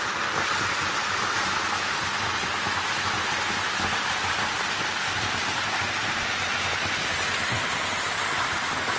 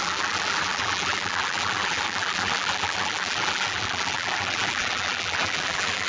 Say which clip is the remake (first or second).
second